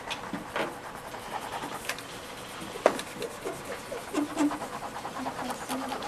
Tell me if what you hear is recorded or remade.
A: recorded